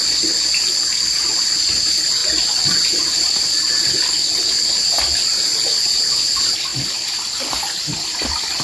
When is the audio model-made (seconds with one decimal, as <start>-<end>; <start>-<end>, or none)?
none

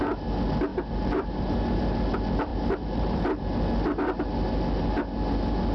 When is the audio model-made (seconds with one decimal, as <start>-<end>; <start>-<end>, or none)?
0.7-1.8; 2.5-3.4

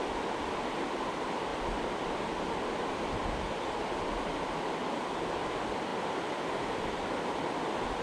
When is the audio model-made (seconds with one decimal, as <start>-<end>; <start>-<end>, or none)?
1.5-3.1

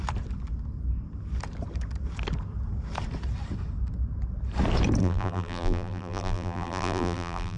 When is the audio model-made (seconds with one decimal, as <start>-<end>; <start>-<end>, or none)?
5.0-7.6

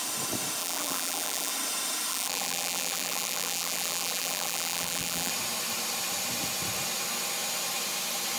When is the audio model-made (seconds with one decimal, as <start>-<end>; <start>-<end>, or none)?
0.6-1.5; 2.1-5.3

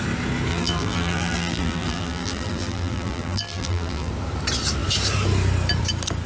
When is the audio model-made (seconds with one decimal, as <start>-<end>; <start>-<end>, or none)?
0.5-4.1

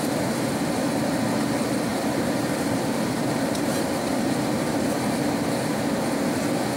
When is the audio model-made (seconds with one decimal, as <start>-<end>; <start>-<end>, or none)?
1.9-6.0